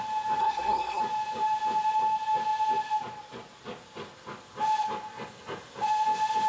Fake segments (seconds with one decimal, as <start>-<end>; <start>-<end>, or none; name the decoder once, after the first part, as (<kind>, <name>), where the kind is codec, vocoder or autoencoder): 0.4-1.0 (codec, SNAC)